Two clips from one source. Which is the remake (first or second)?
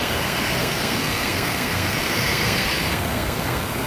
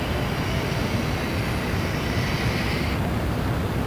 first